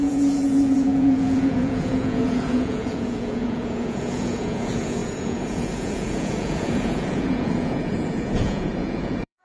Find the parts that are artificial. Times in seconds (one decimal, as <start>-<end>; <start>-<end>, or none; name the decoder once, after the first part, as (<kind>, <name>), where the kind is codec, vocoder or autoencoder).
0.0-9.4 (vocoder, Vocos)